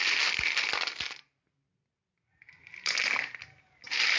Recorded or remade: recorded